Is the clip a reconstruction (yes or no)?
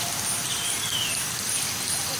no